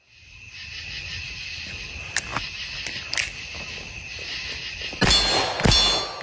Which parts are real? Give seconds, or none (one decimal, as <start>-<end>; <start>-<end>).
0.0-6.2